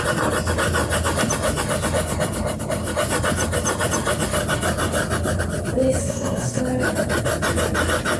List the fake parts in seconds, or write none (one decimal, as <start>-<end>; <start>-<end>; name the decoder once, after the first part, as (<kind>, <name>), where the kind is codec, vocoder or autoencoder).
6.0-6.6 (codec, SNAC)